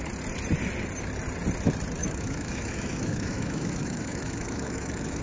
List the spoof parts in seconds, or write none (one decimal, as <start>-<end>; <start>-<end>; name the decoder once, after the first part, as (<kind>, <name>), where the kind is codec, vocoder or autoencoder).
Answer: 2.0-5.2 (autoencoder, DAC-VAE)